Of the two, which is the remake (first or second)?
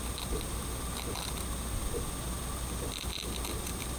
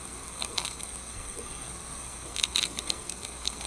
second